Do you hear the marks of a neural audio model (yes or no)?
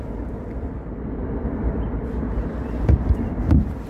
yes